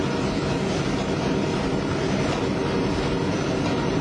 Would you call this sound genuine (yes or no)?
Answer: yes